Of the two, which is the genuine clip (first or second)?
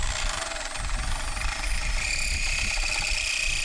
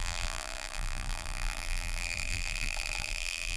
first